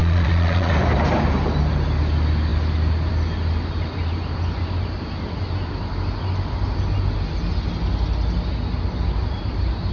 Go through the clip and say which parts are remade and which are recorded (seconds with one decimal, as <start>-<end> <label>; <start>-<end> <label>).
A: 0.0-0.7 remade; 0.7-9.9 recorded